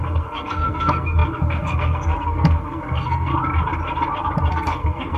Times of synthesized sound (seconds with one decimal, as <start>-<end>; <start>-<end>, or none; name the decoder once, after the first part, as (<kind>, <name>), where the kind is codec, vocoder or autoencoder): 0.0-3.3 (codec, SNAC); 4.5-5.2